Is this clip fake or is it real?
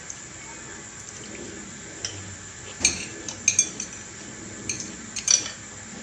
real